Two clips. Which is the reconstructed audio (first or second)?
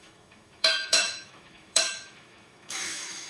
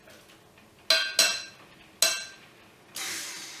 first